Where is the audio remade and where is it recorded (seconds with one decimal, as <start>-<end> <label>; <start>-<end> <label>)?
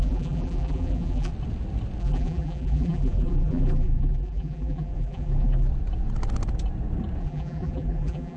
0.0-1.3 remade; 1.3-2.0 recorded; 2.0-5.7 remade; 5.7-7.2 recorded; 7.2-8.4 remade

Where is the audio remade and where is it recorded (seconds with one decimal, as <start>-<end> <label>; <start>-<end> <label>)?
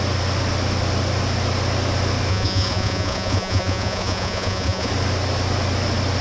0.0-2.3 recorded; 2.3-4.9 remade; 4.9-6.2 recorded